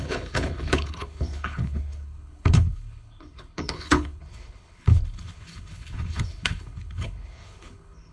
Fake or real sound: fake